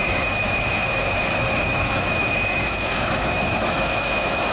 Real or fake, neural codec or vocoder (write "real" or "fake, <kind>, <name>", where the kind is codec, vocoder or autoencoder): fake, autoencoder, DAC-VAE